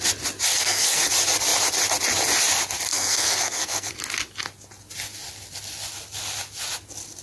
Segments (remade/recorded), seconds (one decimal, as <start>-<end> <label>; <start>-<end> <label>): 0.0-0.5 recorded; 0.5-1.1 remade; 1.1-2.9 recorded; 2.9-3.9 remade; 3.9-7.2 recorded